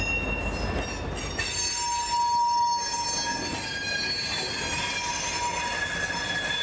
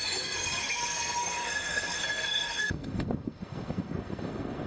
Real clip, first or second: first